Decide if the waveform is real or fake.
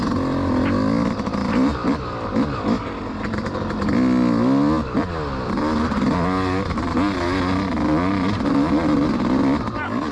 real